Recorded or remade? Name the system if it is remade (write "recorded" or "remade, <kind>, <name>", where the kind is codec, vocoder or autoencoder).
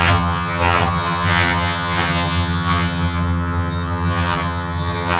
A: remade, vocoder, HiFi-GAN